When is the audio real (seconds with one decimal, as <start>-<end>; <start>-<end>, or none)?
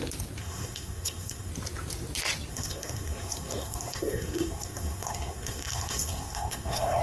0.0-0.4; 1.5-2.5